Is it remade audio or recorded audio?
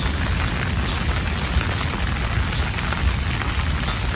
recorded